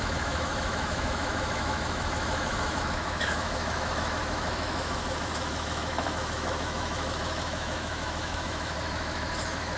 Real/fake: fake